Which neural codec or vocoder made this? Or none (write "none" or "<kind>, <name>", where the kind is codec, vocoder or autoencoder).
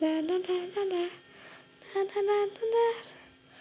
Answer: none